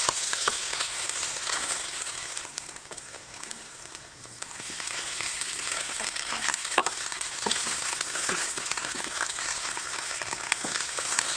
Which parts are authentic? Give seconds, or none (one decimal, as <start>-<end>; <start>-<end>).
none